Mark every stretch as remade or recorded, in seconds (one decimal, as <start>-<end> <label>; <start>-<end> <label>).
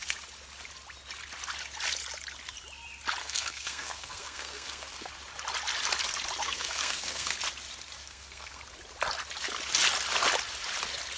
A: 0.0-3.2 recorded; 3.2-5.1 remade; 5.1-6.4 recorded; 6.4-7.3 remade; 7.3-8.0 recorded; 8.0-8.6 remade; 8.6-11.2 recorded